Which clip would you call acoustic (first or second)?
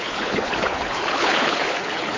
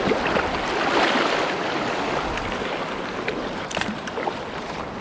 second